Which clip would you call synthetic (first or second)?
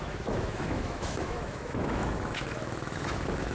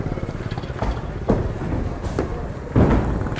first